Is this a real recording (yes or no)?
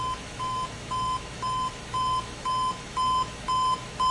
no